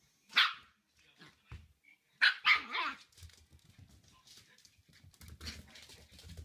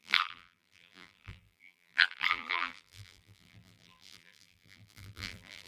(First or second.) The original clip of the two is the first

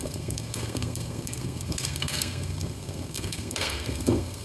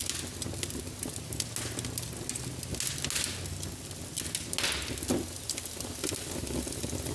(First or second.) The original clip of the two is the second